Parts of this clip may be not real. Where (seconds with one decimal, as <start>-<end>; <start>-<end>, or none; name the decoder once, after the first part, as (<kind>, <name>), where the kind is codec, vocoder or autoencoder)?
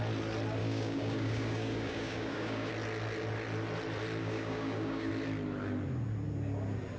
0.6-2.7 (codec, DAC); 4.2-5.1